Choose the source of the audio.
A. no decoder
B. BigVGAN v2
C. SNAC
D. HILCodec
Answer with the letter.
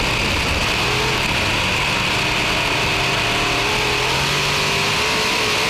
A